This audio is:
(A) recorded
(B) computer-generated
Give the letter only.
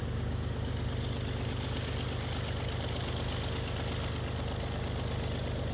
A